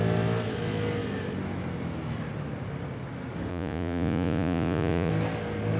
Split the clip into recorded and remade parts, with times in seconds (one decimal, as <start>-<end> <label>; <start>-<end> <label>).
0.0-3.5 recorded; 3.5-5.1 remade; 5.1-5.8 recorded